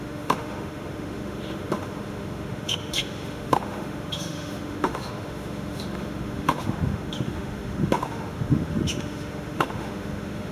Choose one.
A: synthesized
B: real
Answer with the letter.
A